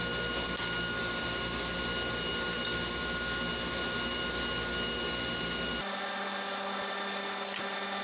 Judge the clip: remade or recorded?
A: recorded